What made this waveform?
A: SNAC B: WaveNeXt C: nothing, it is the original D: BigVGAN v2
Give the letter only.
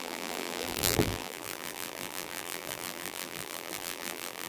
D